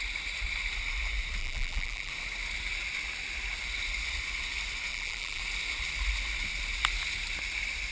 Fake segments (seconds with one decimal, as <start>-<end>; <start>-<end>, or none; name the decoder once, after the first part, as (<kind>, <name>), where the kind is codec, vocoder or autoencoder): 1.4-2.1 (vocoder, BigVGAN v2); 4.9-5.4

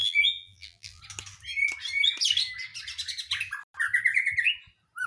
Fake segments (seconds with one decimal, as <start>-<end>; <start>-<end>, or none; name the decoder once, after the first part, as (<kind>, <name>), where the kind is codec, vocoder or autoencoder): 0.0-1.0 (vocoder, BigVGAN v2)

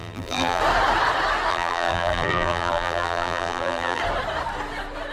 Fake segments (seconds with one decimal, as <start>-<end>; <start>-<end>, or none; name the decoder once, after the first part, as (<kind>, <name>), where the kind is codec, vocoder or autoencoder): 0.0-0.6 (vocoder, BigVGAN v2); 1.5-4.0

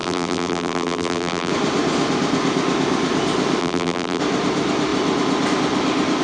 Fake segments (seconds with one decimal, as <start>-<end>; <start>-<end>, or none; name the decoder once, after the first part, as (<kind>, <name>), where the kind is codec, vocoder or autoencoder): 0.0-1.5 (vocoder, BigVGAN v2); 3.6-4.2